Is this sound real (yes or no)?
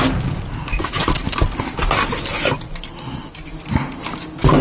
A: yes